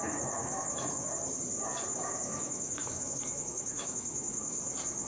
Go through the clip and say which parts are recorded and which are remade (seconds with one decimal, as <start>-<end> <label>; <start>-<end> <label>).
0.0-0.4 recorded; 0.4-1.1 remade; 1.1-1.9 recorded; 1.9-4.6 remade; 4.6-5.1 recorded